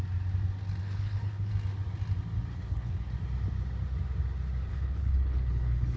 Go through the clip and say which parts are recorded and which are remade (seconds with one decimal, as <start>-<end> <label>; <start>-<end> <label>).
0.0-0.8 recorded; 0.8-1.5 remade; 1.5-2.5 recorded; 2.5-3.1 remade; 3.1-4.7 recorded; 4.7-6.0 remade